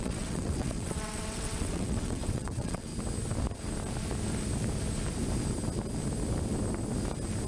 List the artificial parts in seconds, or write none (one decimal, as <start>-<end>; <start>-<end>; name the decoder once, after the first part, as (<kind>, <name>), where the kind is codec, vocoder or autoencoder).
0.0-2.9 (vocoder, WaveNeXt)

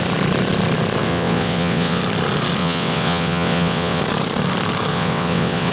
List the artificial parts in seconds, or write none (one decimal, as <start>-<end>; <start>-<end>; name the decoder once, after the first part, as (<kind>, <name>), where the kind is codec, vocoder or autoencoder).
1.0-2.0 (vocoder, WaveNeXt); 2.6-4.0; 4.9-5.7

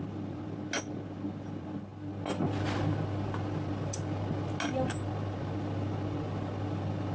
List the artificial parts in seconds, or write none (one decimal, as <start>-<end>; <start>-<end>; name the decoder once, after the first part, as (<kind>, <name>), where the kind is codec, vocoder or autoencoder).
none

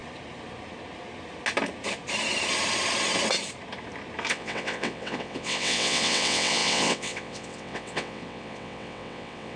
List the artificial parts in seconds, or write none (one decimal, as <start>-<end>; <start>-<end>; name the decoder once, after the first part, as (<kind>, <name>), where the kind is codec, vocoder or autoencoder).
4.3-9.6 (vocoder, WaveNeXt)

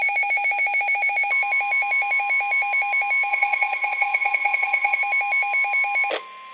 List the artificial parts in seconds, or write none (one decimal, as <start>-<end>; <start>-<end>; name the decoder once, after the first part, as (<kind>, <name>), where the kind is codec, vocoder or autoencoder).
3.3-5.0 (vocoder, WaveNeXt)